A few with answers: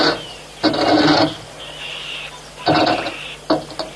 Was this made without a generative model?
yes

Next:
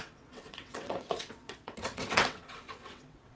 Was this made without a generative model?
no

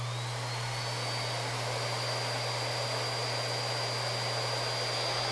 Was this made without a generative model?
yes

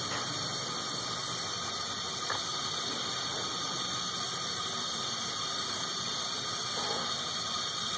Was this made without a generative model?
yes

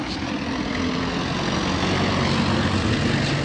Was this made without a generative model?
yes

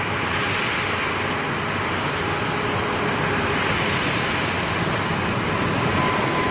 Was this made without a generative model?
yes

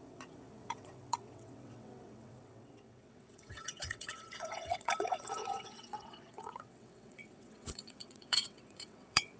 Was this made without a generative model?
no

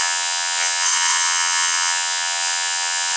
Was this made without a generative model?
no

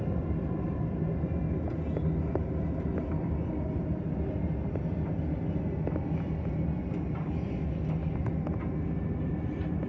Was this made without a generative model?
yes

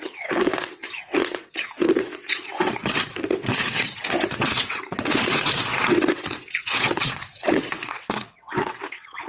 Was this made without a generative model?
no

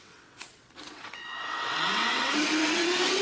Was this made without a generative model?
no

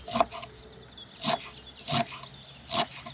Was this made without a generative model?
yes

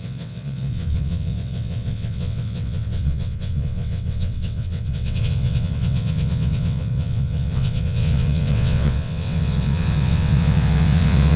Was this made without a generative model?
no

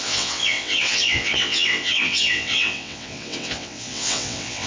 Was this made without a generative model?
no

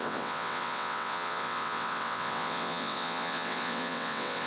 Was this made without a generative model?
no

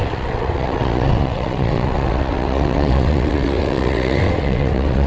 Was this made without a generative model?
no